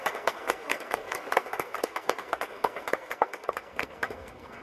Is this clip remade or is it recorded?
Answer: remade